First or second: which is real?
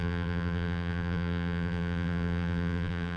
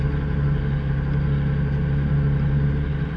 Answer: second